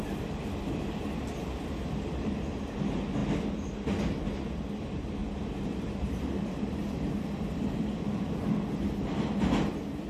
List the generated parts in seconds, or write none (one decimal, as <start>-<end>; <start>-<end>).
5.2-7.0